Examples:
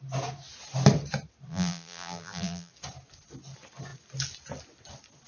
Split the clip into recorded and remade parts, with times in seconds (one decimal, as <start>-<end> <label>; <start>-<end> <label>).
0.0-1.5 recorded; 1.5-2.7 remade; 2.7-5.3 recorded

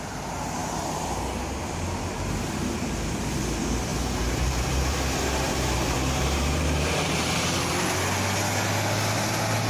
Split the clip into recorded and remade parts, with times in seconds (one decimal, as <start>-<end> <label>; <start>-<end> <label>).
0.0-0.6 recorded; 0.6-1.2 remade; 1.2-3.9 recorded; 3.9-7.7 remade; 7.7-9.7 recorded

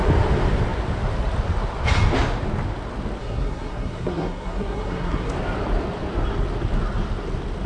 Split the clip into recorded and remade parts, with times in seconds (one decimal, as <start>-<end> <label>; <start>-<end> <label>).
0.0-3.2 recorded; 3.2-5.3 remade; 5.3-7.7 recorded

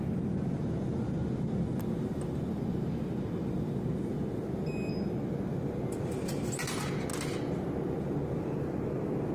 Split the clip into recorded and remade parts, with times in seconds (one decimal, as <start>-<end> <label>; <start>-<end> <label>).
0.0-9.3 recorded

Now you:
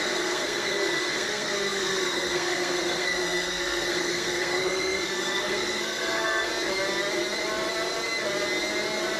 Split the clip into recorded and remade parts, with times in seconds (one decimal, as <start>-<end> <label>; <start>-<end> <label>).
0.0-6.5 remade; 6.5-9.2 recorded